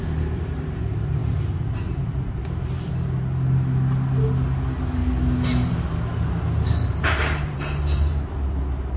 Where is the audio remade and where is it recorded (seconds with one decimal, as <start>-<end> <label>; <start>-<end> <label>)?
0.0-1.2 recorded; 1.2-2.9 remade; 2.9-6.8 recorded; 6.8-8.3 remade; 8.3-9.0 recorded